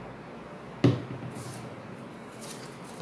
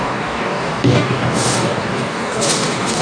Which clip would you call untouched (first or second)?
first